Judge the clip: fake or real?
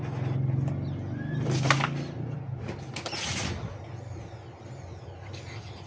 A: real